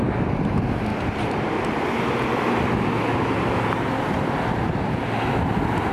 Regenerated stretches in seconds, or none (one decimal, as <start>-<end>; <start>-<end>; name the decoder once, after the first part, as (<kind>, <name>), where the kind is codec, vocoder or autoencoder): none